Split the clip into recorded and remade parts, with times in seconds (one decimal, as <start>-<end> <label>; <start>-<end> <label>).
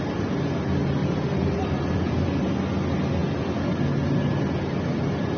0.0-1.0 recorded; 1.0-1.7 remade; 1.7-5.4 recorded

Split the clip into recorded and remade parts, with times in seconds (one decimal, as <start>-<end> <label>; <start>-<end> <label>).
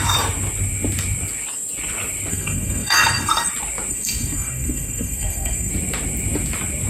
0.0-2.3 recorded; 2.3-3.5 remade; 3.5-3.9 recorded; 3.9-5.7 remade; 5.7-6.9 recorded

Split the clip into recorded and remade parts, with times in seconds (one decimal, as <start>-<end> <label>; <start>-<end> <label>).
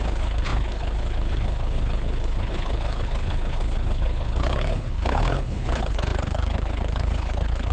0.0-7.7 remade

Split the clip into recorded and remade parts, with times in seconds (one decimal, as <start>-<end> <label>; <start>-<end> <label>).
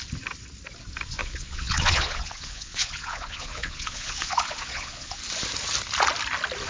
0.0-1.2 recorded; 1.2-5.2 remade; 5.2-6.7 recorded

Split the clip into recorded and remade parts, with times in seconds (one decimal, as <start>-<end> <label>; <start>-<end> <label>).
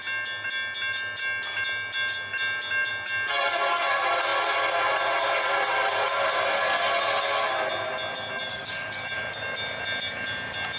0.0-3.3 recorded; 3.3-3.9 remade; 3.9-8.5 recorded; 8.5-9.0 remade; 9.0-10.8 recorded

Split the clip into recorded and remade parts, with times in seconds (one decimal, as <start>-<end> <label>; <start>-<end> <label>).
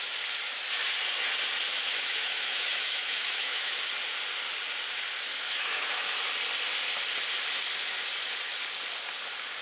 0.0-1.7 recorded; 1.7-3.7 remade; 3.7-5.3 recorded; 5.3-6.2 remade; 6.2-9.6 recorded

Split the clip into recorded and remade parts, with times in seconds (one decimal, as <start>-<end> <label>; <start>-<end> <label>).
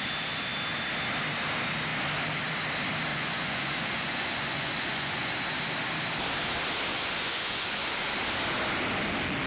0.0-3.1 recorded; 3.1-5.3 remade; 5.3-6.9 recorded; 6.9-8.1 remade; 8.1-9.5 recorded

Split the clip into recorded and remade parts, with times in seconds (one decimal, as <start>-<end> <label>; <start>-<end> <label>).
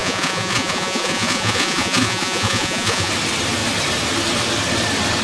0.0-3.1 remade; 3.1-5.2 recorded